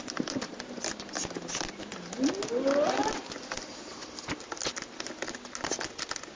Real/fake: real